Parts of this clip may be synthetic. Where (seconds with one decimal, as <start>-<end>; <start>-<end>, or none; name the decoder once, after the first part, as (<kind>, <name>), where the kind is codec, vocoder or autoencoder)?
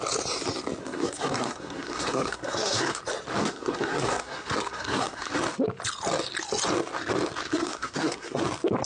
0.8-3.0 (codec, SNAC); 3.4-5.3; 7.5-8.4